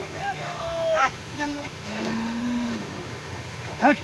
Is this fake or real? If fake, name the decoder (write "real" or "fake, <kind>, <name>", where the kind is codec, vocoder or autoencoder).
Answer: fake, autoencoder, DAC-VAE